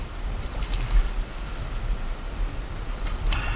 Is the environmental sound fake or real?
real